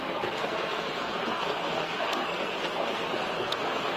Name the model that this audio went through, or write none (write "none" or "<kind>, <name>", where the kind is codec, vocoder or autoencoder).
codec, SNAC